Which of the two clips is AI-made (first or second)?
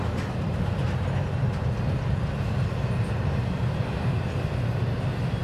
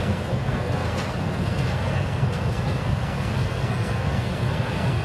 second